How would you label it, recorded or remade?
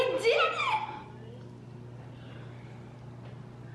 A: recorded